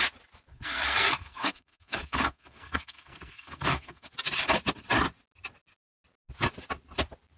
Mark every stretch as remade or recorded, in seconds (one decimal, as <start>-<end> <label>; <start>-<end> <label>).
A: 0.0-0.5 recorded; 0.5-4.1 remade; 4.1-7.4 recorded